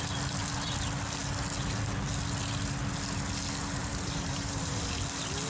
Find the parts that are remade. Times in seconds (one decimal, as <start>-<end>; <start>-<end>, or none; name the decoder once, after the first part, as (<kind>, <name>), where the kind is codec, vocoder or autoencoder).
3.8-4.8 (vocoder, BigVGAN v2)